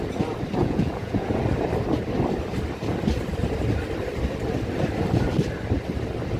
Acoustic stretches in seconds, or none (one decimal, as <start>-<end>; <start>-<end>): 0.0-0.6; 1.4-6.4

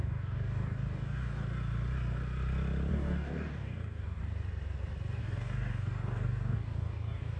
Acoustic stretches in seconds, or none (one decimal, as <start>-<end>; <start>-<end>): 1.4-2.9; 4.2-5.2

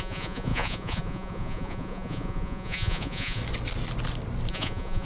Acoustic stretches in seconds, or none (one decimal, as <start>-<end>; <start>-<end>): 3.4-4.5

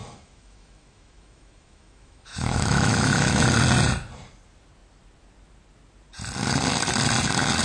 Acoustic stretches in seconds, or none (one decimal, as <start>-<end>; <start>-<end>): 3.4-7.6

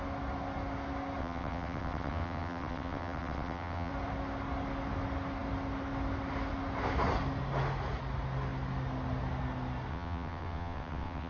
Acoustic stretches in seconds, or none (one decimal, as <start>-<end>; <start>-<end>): 0.0-1.2; 3.9-9.9